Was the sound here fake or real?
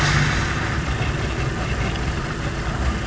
real